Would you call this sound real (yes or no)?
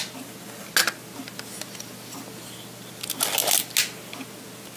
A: yes